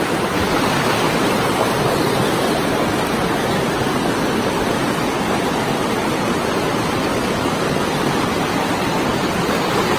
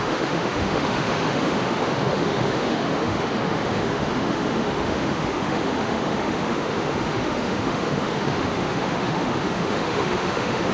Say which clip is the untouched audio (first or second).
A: first